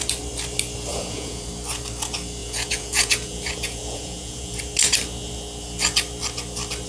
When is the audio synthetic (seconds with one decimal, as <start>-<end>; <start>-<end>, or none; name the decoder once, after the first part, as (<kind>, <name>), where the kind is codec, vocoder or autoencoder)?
0.9-1.5 (vocoder, Vocos); 2.4-4.6